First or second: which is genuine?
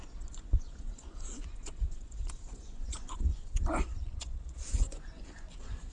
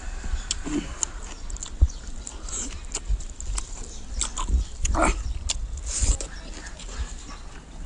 second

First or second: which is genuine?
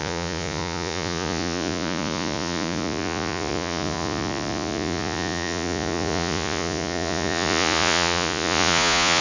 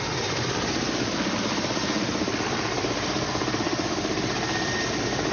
second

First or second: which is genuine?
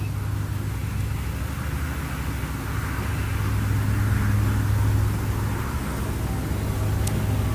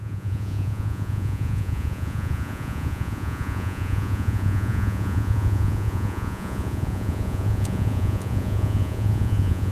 first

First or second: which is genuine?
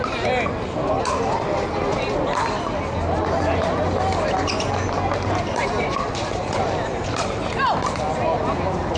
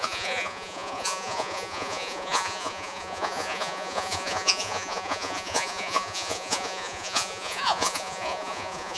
first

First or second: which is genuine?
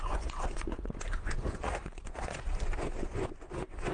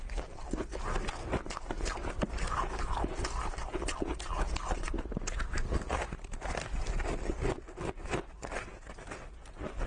second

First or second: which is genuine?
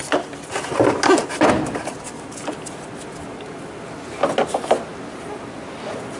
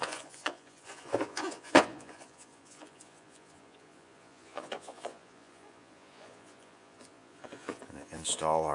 first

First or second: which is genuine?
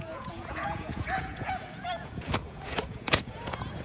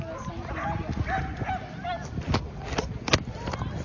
second